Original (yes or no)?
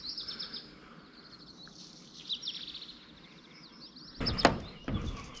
yes